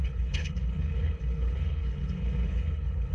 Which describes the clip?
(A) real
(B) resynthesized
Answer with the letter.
B